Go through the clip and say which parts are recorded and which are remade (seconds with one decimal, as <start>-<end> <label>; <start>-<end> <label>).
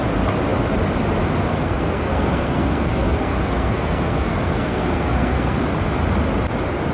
0.0-1.5 recorded; 1.5-5.6 remade; 5.6-6.9 recorded